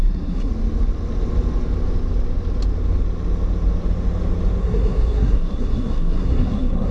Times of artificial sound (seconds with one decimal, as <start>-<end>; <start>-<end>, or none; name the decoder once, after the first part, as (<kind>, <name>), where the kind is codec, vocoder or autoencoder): 0.0-0.5 (codec, SNAC); 4.6-6.9